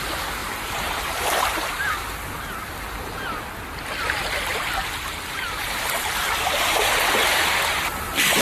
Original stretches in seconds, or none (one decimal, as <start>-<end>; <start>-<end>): 0.0-0.4; 1.9-4.5